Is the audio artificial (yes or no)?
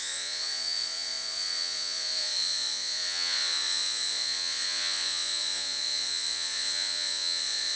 yes